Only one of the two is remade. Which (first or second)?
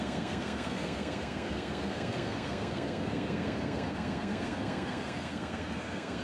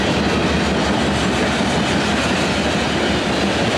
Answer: first